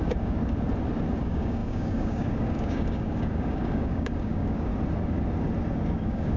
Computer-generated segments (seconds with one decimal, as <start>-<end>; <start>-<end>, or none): 0.0-0.4; 1.2-4.7; 5.7-6.4